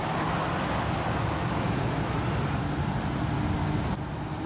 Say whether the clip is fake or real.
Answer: real